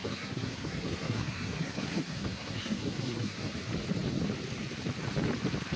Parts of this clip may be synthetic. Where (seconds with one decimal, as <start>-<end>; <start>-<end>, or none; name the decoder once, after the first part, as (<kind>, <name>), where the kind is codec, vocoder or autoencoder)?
0.0-3.5 (codec, SNAC)